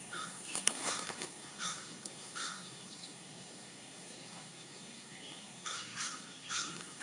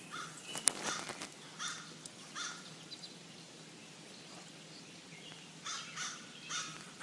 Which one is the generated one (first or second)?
first